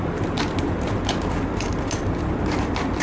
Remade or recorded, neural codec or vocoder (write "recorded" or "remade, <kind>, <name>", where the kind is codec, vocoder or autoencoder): recorded